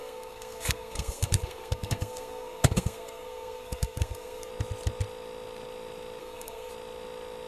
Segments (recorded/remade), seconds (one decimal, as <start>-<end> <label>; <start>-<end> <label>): 0.0-4.5 remade; 4.5-6.2 recorded; 6.2-6.7 remade; 6.7-7.5 recorded